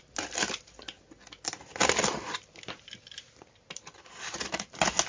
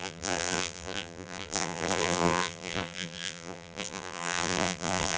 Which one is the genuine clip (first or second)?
first